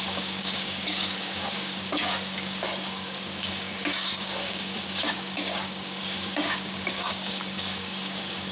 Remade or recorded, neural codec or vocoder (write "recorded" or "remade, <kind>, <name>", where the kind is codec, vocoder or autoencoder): remade, codec, DAC